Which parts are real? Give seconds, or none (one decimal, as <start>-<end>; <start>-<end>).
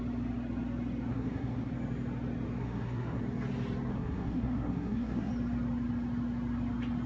0.0-1.1; 1.7-2.6; 3.2-3.9; 5.3-7.1